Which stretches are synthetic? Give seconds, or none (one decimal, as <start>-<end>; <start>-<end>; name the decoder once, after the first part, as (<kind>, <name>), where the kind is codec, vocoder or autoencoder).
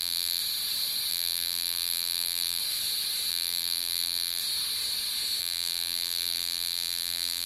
0.0-0.4 (vocoder, BigVGAN v2); 1.1-2.6; 3.3-4.4; 5.4-7.5